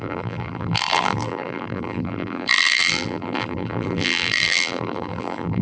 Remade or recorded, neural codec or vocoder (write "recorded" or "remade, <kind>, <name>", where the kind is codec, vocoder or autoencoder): remade, vocoder, BigVGAN v2